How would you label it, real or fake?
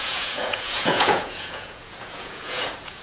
fake